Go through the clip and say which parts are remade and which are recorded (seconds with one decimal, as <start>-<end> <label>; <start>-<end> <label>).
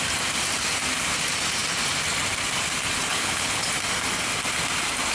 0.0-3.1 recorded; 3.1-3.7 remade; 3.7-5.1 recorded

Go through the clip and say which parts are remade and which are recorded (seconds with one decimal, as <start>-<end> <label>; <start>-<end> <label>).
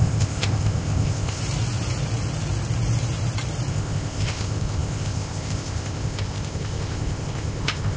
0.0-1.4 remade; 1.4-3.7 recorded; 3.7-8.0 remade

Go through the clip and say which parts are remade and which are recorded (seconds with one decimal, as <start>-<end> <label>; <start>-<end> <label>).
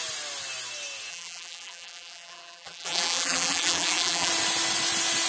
0.0-1.1 recorded; 1.1-4.3 remade; 4.3-5.3 recorded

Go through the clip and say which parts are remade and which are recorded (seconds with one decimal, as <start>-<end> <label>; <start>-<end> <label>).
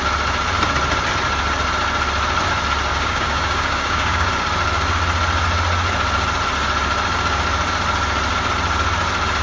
0.0-2.9 recorded; 2.9-4.3 remade; 4.3-9.4 recorded